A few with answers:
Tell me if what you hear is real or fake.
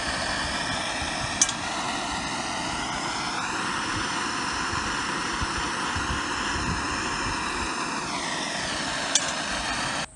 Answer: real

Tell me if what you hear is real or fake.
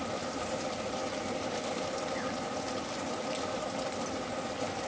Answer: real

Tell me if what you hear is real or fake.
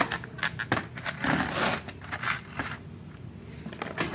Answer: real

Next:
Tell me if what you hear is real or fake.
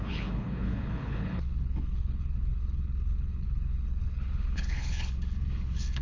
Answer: fake